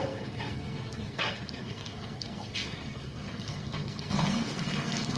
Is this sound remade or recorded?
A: remade